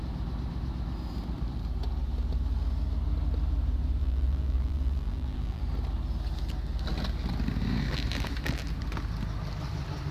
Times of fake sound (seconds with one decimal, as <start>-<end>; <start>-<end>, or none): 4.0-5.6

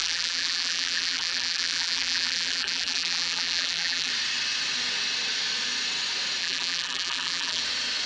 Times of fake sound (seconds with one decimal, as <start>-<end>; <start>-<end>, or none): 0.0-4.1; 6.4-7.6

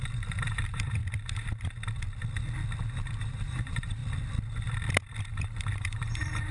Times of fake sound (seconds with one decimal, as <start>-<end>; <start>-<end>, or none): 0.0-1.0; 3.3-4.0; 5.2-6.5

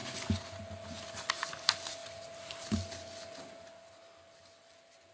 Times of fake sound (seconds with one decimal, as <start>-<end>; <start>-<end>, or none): none